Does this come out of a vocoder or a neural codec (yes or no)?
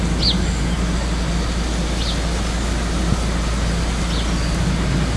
no